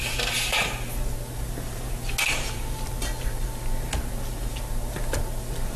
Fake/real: real